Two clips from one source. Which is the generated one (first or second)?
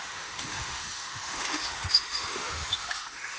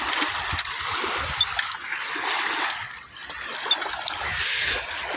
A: first